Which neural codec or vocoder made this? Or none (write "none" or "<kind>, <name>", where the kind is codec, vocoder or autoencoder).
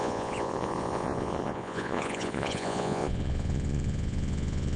vocoder, Vocos